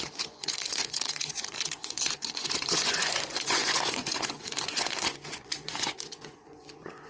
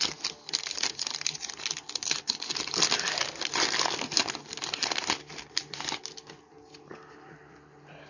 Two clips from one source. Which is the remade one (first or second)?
first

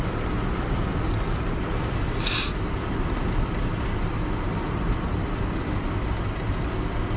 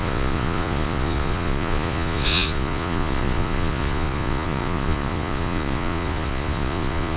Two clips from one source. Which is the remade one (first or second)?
second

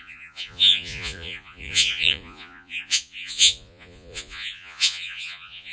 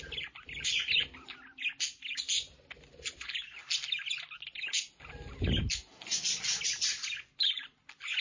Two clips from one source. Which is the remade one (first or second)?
first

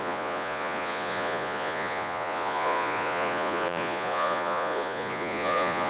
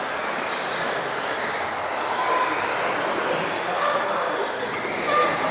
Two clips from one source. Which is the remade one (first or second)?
first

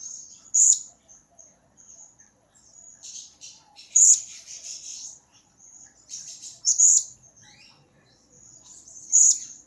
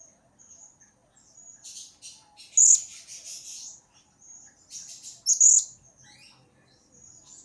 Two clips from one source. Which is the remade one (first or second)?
first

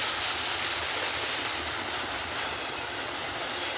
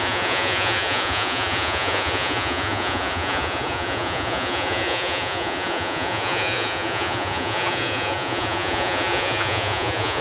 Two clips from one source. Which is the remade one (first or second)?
second